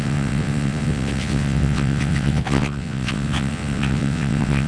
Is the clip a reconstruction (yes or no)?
yes